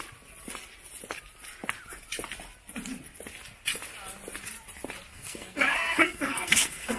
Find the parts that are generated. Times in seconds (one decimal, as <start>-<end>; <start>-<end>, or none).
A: 5.1-7.0